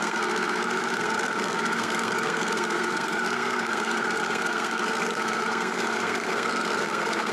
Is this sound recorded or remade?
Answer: remade